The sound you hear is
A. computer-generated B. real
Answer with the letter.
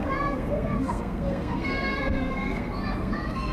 A